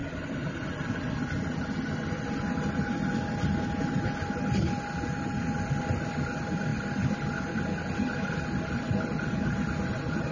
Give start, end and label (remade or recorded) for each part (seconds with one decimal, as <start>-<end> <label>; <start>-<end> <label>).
0.0-10.3 recorded